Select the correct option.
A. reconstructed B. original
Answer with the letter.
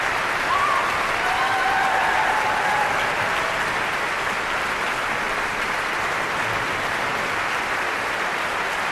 B